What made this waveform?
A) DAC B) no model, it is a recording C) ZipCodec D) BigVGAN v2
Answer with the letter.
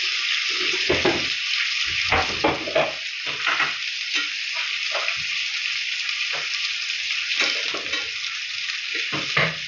B